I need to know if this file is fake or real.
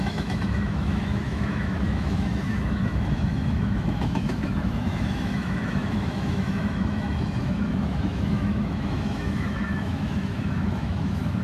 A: fake